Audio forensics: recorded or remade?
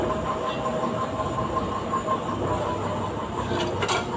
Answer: recorded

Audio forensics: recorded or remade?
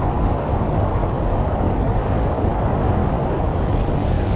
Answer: remade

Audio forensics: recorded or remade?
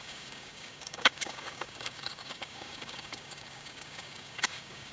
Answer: remade